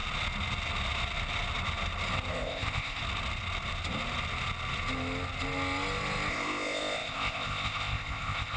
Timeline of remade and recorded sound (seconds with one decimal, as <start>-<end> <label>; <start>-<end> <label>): 0.0-2.3 recorded; 2.3-3.0 remade; 3.0-6.3 recorded; 6.3-8.6 remade